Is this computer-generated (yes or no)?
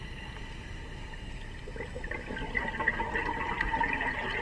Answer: no